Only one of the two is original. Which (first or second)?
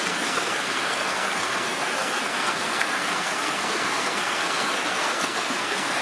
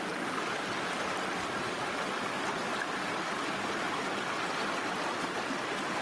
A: second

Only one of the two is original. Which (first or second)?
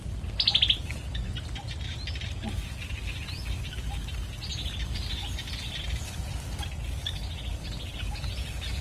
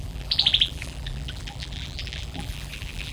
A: first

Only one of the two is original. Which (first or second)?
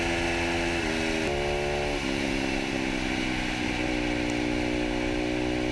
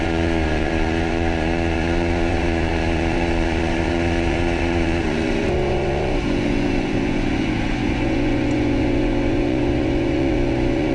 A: first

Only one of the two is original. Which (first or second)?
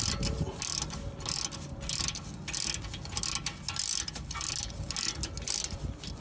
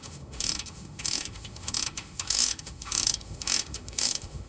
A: first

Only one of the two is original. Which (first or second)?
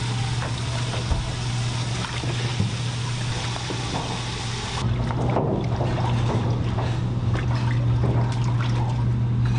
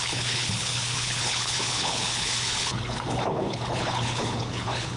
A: first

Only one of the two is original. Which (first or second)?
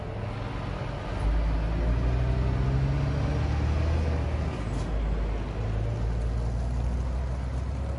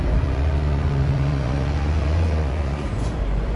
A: first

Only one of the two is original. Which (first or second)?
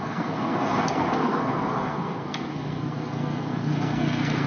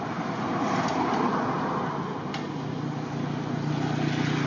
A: second